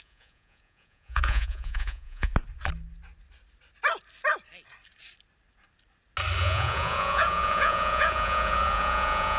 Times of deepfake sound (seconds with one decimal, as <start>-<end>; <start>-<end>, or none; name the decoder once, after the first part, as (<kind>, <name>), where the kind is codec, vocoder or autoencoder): 0.0-2.3 (vocoder, Vocos); 6.4-9.4